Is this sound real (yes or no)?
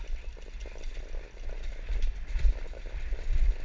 yes